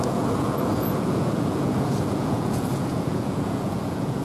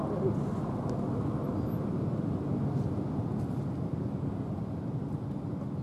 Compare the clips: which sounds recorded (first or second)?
second